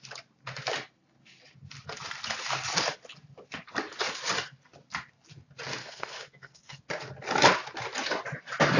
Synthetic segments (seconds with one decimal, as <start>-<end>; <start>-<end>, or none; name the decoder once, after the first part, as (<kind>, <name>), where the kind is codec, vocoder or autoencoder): 5.8-6.8 (codec, SNAC)